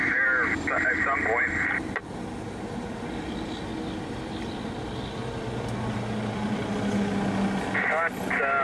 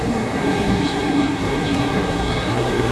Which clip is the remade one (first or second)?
second